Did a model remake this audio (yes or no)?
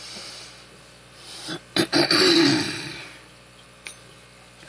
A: yes